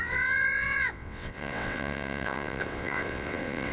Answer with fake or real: fake